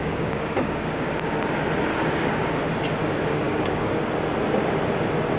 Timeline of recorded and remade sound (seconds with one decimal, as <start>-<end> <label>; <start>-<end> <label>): 0.0-1.1 remade; 1.1-1.9 recorded; 1.9-2.5 remade; 2.5-3.0 recorded; 3.0-4.0 remade; 4.0-5.4 recorded